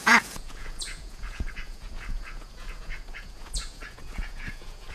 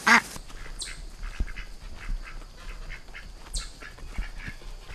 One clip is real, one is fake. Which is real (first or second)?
second